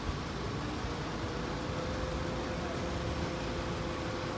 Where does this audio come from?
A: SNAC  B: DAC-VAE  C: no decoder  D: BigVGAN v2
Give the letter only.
C